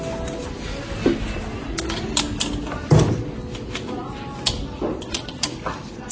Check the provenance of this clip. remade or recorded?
recorded